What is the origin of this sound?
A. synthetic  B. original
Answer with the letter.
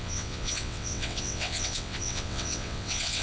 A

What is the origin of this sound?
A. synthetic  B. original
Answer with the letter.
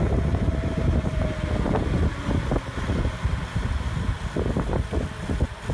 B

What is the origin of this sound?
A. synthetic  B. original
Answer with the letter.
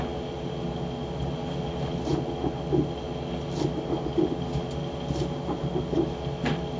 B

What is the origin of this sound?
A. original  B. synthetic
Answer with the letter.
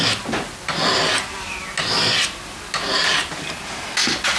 A